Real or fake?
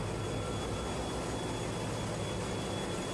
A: real